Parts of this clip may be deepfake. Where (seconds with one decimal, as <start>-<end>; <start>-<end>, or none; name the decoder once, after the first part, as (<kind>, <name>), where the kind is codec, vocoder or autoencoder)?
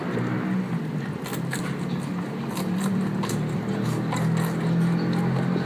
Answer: 1.3-3.9 (vocoder, BigVGAN v2)